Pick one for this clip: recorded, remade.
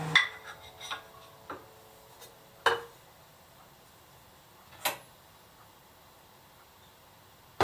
recorded